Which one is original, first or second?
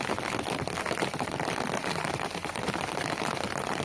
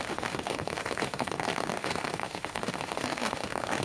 first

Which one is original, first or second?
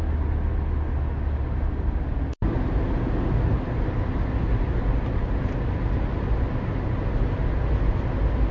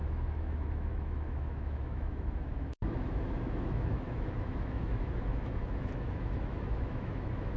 first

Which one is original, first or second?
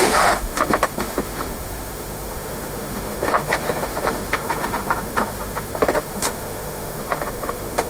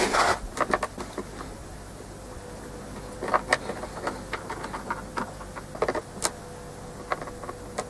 second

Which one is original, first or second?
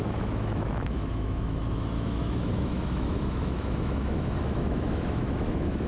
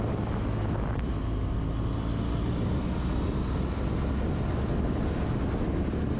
second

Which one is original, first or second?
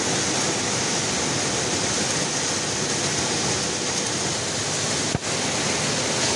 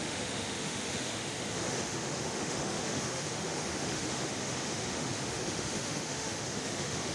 first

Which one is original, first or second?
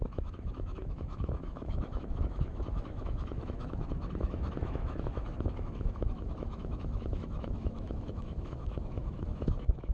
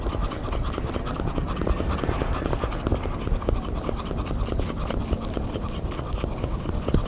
second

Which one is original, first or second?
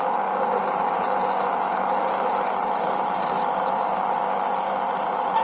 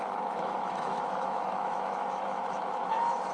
first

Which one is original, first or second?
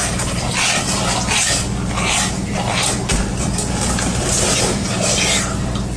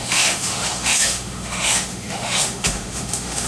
first